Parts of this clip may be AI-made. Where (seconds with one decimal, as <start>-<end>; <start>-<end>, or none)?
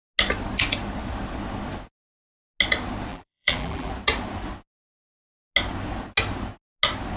3.1-3.9